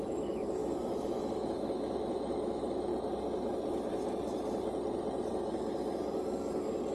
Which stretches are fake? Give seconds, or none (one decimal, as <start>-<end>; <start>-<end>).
0.0-2.9